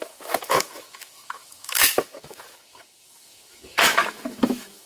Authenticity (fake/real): fake